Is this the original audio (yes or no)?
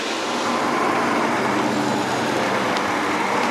yes